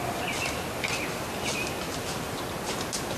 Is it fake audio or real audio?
real